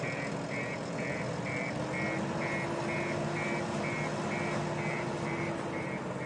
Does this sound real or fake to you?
real